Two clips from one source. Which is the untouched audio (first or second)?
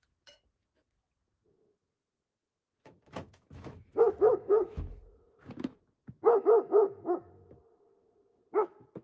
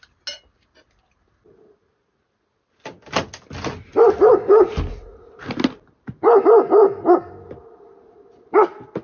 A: second